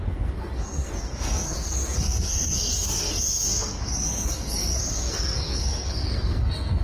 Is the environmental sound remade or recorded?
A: remade